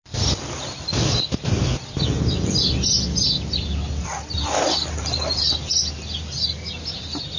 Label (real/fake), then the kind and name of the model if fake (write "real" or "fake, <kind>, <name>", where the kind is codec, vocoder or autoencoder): real